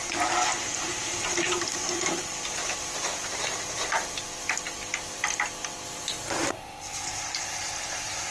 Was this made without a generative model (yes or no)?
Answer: no